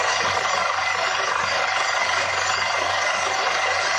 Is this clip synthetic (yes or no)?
yes